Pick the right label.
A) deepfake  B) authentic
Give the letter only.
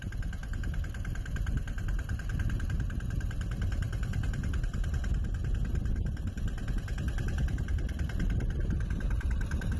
B